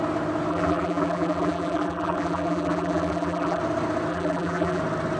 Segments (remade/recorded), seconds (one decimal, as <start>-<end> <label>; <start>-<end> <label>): 0.0-0.5 recorded; 0.5-3.6 remade; 3.6-4.1 recorded; 4.1-4.8 remade; 4.8-5.2 recorded

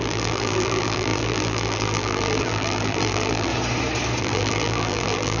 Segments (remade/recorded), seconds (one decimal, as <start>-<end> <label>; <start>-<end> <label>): 0.0-3.5 remade; 3.5-4.2 recorded; 4.2-5.4 remade

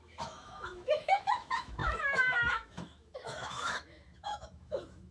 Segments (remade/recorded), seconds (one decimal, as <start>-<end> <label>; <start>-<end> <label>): 0.0-5.1 remade

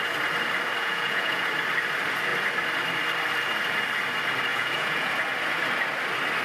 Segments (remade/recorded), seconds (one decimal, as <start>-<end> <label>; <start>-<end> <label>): 0.0-0.8 recorded; 0.8-1.5 remade; 1.5-4.5 recorded; 4.5-5.1 remade; 5.1-6.4 recorded